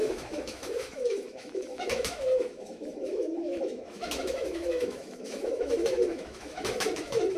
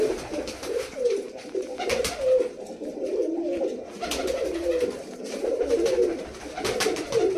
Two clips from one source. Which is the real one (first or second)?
second